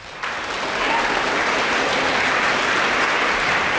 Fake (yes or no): no